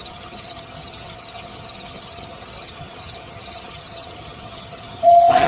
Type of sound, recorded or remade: remade